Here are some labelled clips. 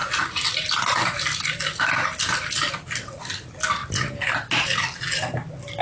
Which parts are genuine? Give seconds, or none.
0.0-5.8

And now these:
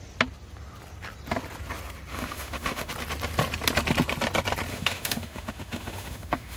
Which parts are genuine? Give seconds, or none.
0.0-2.1; 2.9-4.7